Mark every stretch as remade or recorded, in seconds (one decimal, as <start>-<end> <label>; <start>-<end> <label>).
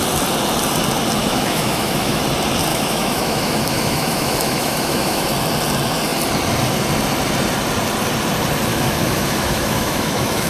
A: 0.0-1.2 recorded; 1.2-2.2 remade; 2.2-2.7 recorded; 2.7-5.3 remade; 5.3-8.7 recorded; 8.7-10.5 remade